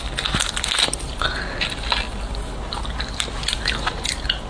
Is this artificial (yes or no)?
no